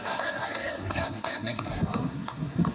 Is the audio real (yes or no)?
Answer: no